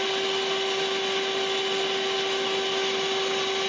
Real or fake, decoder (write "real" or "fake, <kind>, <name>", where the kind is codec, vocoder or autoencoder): real